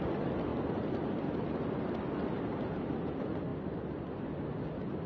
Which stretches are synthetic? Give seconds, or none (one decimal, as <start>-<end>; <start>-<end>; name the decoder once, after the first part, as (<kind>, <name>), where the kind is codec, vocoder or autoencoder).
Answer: none